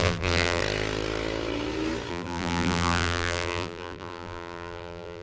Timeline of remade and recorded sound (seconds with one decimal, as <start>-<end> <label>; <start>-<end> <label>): 0.0-0.6 remade; 0.6-2.1 recorded; 2.1-5.2 remade